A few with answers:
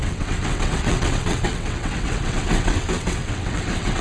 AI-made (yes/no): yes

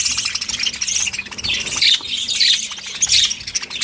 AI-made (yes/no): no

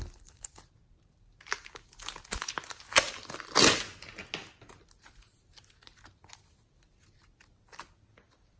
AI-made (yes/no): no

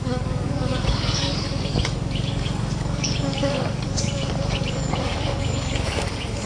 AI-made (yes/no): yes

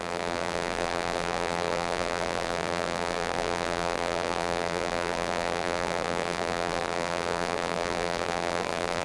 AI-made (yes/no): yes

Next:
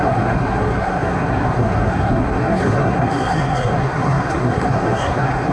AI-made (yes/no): yes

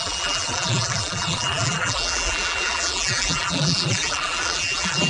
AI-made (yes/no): yes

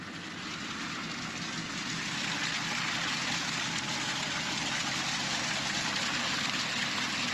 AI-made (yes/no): no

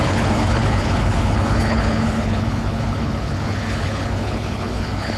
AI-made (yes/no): yes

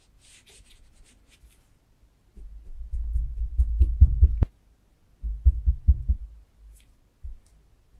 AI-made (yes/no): no